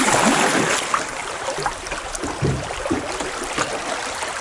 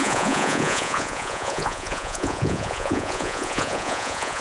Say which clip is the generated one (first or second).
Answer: second